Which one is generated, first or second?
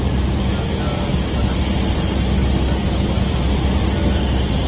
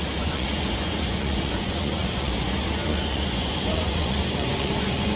second